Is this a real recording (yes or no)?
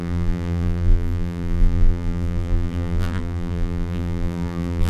no